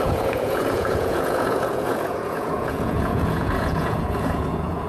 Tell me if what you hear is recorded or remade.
remade